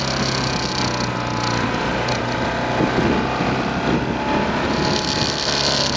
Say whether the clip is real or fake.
real